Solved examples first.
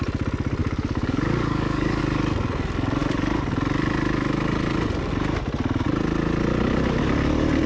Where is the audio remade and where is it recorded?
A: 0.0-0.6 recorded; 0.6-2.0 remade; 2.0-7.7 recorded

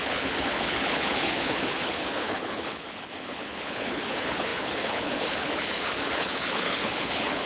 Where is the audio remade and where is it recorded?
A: 0.0-7.5 remade

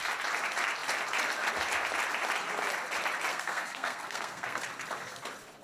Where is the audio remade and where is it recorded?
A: 0.0-3.3 recorded; 3.3-4.6 remade; 4.6-5.6 recorded

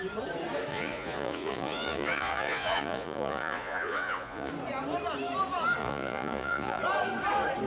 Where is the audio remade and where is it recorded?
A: 0.0-0.7 recorded; 0.7-4.5 remade; 4.5-5.8 recorded; 5.8-6.8 remade; 6.8-7.7 recorded

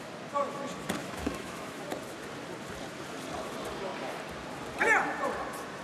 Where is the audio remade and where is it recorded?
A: 0.0-1.0 recorded; 1.0-1.8 remade; 1.8-5.8 recorded

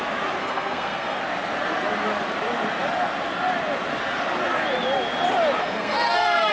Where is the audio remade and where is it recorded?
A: 0.0-0.4 recorded; 0.4-1.2 remade; 1.2-5.6 recorded; 5.6-6.5 remade